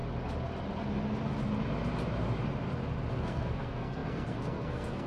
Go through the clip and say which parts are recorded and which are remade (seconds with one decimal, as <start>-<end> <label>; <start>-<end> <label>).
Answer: 0.0-3.1 recorded; 3.1-5.1 remade